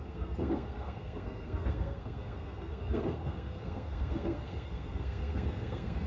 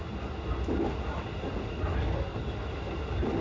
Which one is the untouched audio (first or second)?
second